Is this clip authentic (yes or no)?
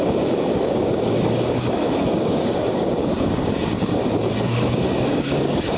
no